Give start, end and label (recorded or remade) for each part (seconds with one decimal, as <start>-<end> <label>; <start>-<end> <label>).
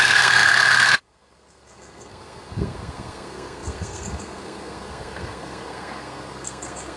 0.0-7.0 remade